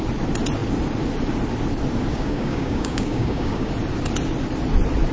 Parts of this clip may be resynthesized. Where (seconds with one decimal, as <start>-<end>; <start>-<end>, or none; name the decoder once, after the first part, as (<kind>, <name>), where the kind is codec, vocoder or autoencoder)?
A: 2.1-3.7 (codec, DAC)